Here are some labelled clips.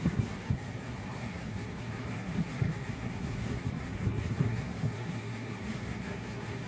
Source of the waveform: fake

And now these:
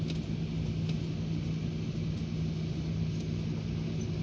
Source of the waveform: real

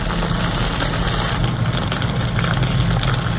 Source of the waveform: real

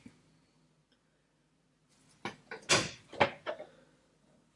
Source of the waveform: real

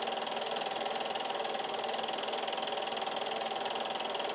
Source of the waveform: real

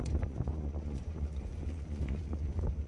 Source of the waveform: fake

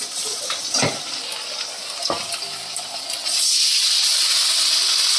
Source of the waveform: real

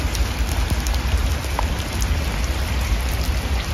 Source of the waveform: real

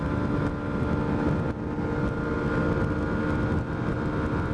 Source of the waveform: real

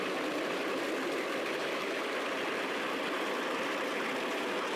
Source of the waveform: fake